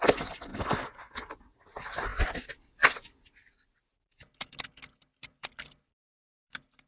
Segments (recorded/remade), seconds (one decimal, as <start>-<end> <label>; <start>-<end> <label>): 0.0-0.5 remade; 0.5-1.4 recorded; 1.4-6.9 remade